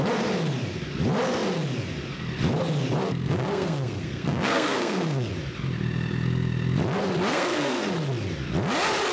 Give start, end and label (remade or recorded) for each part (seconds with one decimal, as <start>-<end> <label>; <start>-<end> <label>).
0.0-3.0 recorded; 3.0-5.3 remade; 5.3-7.3 recorded; 7.3-7.9 remade; 7.9-9.1 recorded